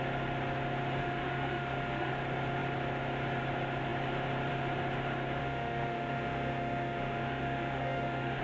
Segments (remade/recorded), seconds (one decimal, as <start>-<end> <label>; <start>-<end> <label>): 0.0-1.0 recorded; 1.0-2.1 remade; 2.1-5.4 recorded; 5.4-8.4 remade